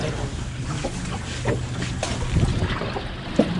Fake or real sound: real